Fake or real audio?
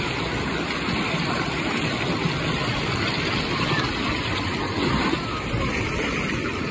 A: real